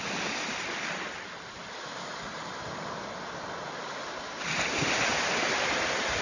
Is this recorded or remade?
recorded